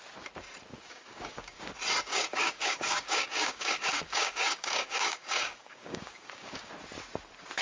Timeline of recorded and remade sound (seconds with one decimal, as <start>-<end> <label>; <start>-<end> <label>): 0.0-0.7 recorded; 0.7-1.6 remade; 1.6-2.1 recorded; 2.1-6.7 remade; 6.7-7.6 recorded